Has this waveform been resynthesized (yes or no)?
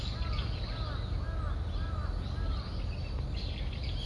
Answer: no